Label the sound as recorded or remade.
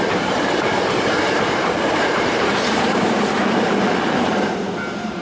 remade